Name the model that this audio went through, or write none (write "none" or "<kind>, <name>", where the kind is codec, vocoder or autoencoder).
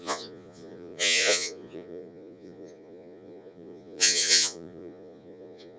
vocoder, Vocos